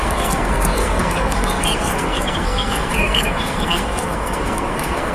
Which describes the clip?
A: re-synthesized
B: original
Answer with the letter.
A